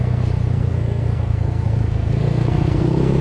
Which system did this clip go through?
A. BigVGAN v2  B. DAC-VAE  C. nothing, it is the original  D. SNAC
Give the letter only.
D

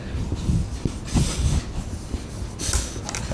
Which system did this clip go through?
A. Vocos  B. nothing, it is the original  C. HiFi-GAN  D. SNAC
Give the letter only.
B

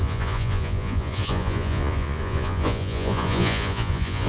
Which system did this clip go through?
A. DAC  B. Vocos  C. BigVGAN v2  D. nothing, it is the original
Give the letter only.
B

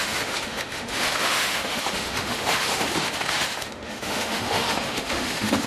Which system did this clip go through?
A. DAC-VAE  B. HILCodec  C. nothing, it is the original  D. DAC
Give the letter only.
A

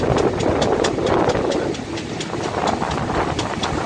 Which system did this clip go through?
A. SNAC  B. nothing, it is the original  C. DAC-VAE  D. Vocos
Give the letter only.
B